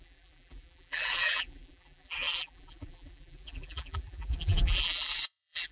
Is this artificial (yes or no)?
yes